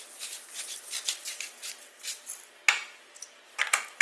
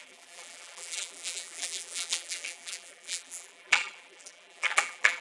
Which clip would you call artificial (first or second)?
second